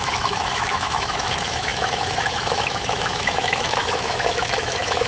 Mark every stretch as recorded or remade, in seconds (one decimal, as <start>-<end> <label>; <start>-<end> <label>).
0.0-5.1 remade